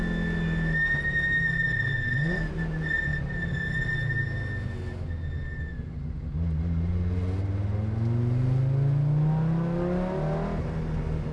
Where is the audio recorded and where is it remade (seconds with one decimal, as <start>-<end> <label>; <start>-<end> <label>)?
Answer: 0.0-11.3 recorded